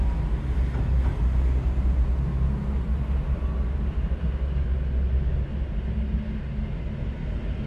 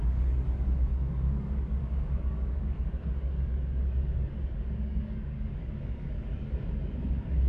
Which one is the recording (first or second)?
first